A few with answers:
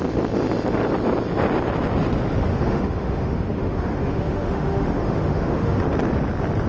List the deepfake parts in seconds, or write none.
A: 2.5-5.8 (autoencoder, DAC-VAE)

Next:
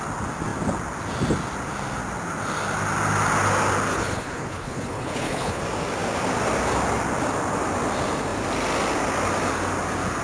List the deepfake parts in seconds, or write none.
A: 3.9-5.6 (codec, HILCodec)

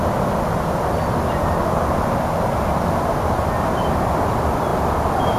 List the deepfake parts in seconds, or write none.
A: none

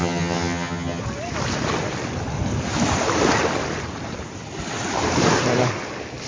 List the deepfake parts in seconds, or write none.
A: 0.0-1.0 (vocoder, HiFi-GAN)

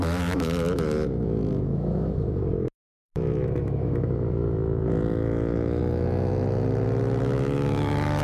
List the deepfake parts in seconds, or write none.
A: 0.0-5.8 (autoencoder, DAC-VAE); 7.2-8.2

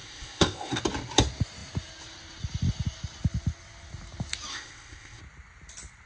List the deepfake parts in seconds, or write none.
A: 0.0-0.8 (codec, ZipCodec); 4.5-5.2

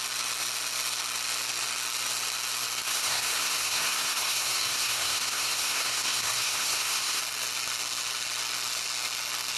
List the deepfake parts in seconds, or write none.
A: 2.9-7.2 (codec, SNAC)

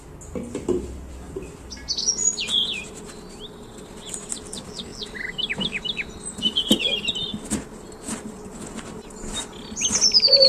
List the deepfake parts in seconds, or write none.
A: none